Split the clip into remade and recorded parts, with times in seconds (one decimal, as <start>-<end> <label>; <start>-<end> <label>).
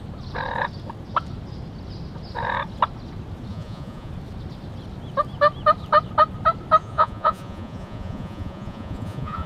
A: 0.0-3.5 recorded; 3.5-4.1 remade; 4.1-6.8 recorded; 6.8-9.5 remade